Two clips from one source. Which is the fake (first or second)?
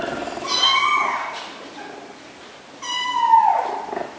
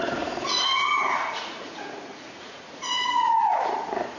second